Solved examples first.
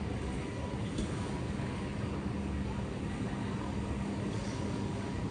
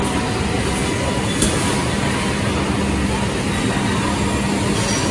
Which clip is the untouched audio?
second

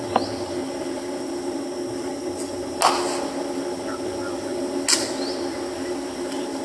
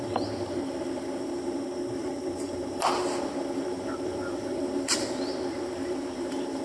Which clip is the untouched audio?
first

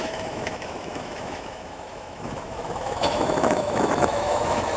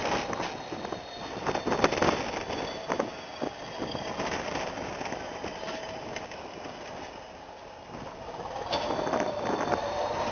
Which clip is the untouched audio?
second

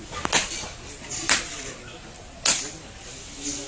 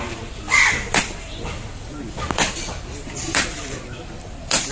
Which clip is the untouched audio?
first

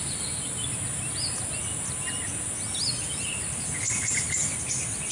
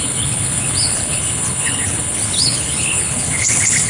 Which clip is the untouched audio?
first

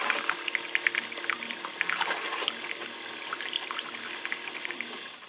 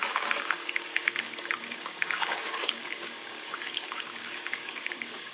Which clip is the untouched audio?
first